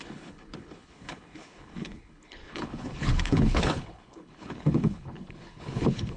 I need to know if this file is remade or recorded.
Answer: remade